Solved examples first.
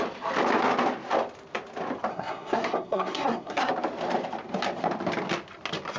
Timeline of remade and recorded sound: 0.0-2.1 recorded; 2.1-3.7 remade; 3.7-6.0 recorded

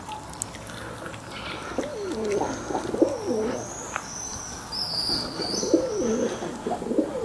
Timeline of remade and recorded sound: 0.0-7.2 recorded

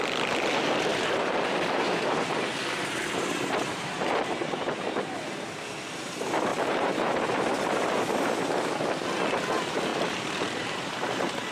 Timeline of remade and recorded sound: 0.0-0.9 recorded; 0.9-5.1 remade; 5.1-6.5 recorded; 6.5-8.4 remade; 8.4-9.9 recorded; 9.9-10.9 remade; 10.9-11.5 recorded

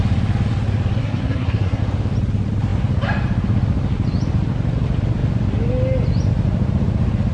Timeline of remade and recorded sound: 0.0-1.0 recorded; 1.0-1.8 remade; 1.8-7.3 recorded